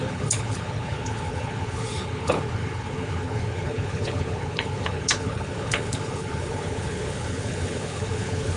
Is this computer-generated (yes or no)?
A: yes